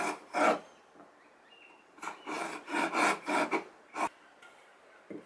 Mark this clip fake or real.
real